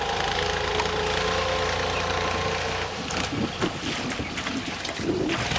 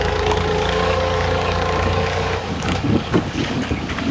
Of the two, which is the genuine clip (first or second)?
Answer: first